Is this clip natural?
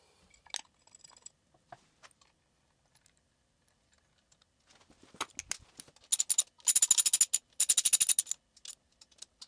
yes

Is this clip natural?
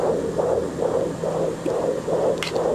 yes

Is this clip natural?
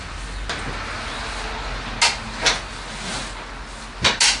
yes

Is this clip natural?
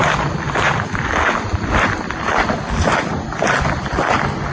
yes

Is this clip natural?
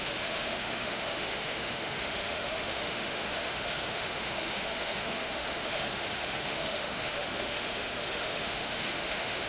no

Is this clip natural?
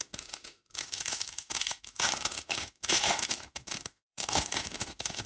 no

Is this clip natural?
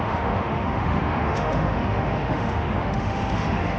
no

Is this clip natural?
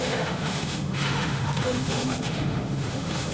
no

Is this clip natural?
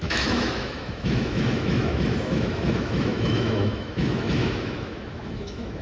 no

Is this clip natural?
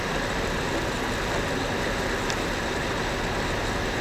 yes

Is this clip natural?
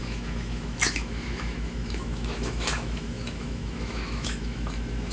no